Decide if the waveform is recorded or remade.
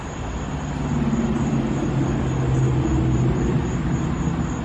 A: recorded